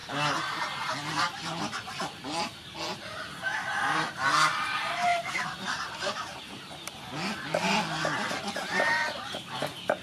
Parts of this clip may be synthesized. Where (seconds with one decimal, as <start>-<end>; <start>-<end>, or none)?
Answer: 5.1-6.4